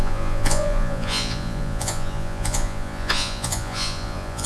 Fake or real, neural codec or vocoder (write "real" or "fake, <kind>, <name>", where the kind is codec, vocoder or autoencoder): fake, vocoder, Vocos